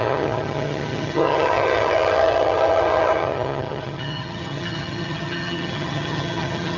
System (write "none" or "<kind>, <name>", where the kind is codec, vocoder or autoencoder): vocoder, HiFi-GAN